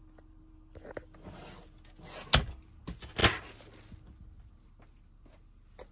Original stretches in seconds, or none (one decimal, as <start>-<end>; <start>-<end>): 0.0-5.9